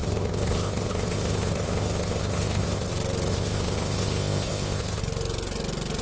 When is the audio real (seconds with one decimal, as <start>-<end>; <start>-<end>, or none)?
2.9-3.3; 5.0-6.0